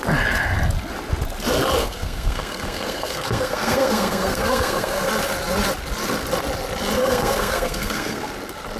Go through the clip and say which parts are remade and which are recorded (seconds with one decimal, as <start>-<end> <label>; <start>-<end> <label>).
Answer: 0.0-1.8 recorded; 1.8-5.1 remade; 5.1-7.0 recorded; 7.0-8.3 remade; 8.3-8.8 recorded